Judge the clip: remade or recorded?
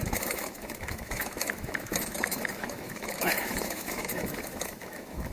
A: remade